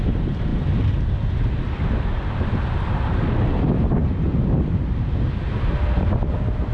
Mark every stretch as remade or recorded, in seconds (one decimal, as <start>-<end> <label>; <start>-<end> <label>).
0.0-0.5 recorded; 0.5-2.8 remade; 2.8-4.0 recorded; 4.0-4.9 remade; 4.9-6.7 recorded